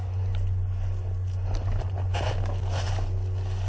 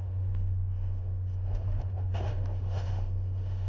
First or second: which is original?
first